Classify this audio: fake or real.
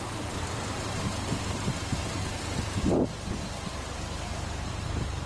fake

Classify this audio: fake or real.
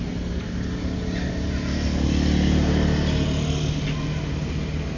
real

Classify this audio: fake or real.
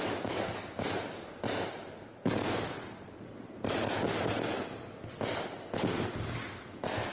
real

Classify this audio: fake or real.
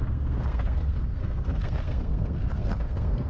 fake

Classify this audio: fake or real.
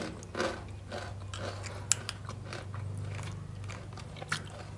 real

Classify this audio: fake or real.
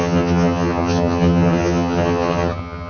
fake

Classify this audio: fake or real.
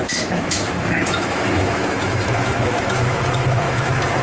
fake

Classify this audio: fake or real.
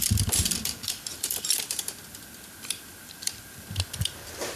fake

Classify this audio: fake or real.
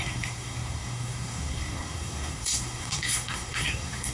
fake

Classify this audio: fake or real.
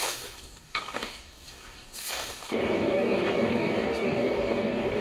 fake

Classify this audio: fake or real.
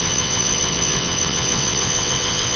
fake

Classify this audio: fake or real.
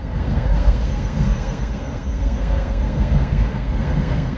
fake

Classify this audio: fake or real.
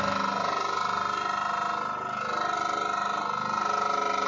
real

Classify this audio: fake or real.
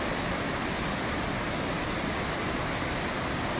real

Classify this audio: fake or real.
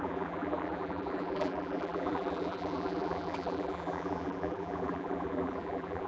fake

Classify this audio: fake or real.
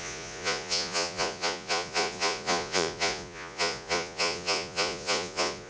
fake